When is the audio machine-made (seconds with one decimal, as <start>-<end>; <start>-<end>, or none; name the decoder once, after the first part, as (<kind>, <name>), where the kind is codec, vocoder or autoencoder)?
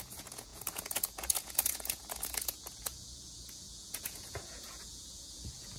0.0-5.8 (vocoder, Vocos)